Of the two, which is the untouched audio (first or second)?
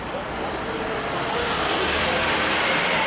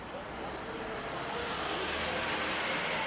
second